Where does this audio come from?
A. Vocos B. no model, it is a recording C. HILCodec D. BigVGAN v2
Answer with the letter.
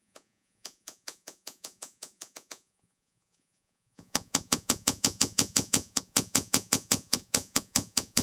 A